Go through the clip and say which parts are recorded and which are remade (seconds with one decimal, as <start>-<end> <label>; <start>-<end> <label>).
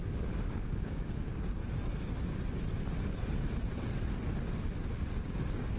0.0-1.6 remade; 1.6-4.9 recorded; 4.9-5.8 remade